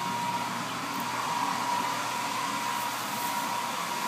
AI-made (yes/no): no